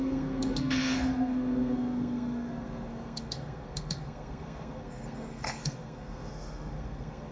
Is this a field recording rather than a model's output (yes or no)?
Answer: no